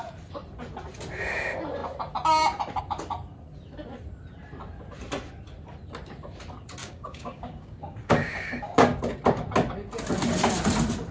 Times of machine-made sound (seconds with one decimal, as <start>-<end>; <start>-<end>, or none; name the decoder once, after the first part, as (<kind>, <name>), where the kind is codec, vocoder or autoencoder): 6.8-9.0 (codec, DAC)